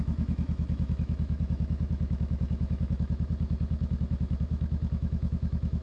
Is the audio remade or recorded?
remade